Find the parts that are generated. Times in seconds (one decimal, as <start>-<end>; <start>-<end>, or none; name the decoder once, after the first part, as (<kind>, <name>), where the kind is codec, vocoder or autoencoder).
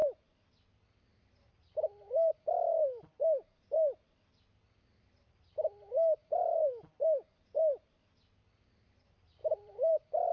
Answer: 2.7-3.6 (vocoder, BigVGAN v2); 6.2-6.7; 9.4-9.9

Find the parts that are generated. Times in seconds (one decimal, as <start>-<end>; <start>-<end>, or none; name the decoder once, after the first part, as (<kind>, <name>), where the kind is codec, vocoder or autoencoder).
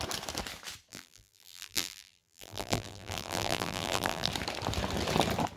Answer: 0.9-4.3 (vocoder, BigVGAN v2)